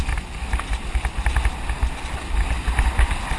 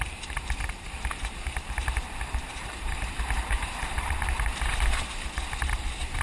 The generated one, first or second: second